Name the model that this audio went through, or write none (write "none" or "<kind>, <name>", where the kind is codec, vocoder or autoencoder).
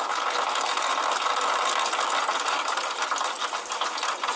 vocoder, BigVGAN v2